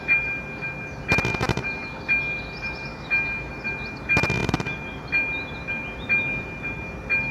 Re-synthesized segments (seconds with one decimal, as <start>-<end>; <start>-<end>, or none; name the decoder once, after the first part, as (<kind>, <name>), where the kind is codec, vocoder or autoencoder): 2.9-3.5 (autoencoder, DAC-VAE)